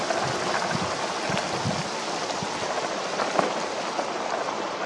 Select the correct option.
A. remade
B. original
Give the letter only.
B